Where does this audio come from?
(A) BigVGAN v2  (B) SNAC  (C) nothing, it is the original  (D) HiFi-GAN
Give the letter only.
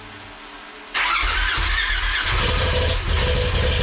C